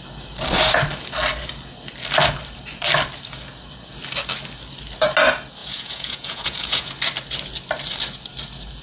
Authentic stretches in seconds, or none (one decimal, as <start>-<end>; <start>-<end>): 0.0-5.6; 6.9-8.8